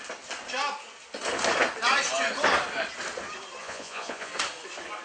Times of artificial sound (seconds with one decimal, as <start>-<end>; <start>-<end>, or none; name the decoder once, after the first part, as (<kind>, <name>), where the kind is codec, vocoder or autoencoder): 3.6-4.3 (vocoder, Vocos)